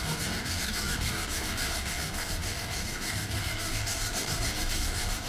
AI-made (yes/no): yes